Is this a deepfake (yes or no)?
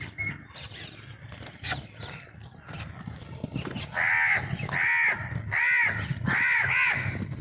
no